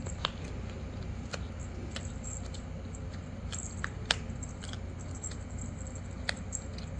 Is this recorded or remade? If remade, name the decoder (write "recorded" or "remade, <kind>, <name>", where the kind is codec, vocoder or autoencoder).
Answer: recorded